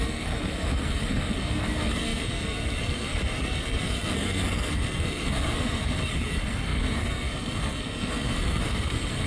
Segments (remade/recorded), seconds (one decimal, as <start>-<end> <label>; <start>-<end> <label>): 0.0-9.3 remade